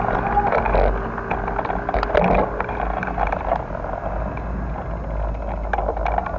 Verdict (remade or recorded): recorded